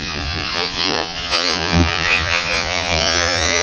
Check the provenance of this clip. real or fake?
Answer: fake